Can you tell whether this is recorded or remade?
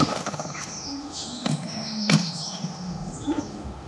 remade